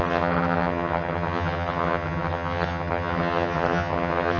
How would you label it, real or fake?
fake